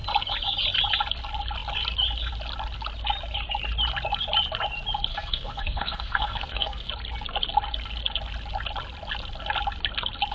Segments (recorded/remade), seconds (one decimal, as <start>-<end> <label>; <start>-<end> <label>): 0.0-5.1 recorded; 5.1-6.9 remade; 6.9-10.3 recorded